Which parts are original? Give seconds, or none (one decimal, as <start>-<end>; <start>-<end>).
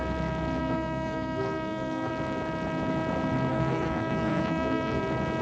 0.0-0.6; 2.1-3.5; 5.0-5.4